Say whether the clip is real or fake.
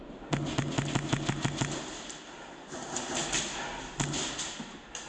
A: real